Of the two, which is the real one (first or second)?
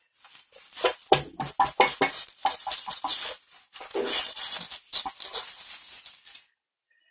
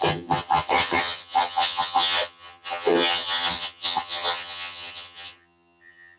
first